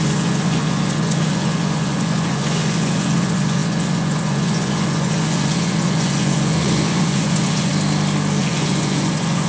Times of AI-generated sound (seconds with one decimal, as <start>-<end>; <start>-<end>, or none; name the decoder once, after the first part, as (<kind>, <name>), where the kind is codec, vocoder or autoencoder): 0.0-7.7 (vocoder, Vocos); 8.4-9.5